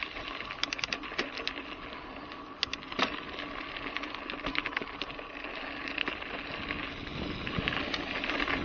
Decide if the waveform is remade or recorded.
recorded